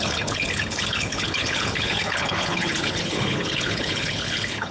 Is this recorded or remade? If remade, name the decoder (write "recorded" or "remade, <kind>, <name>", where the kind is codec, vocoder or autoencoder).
remade, codec, HILCodec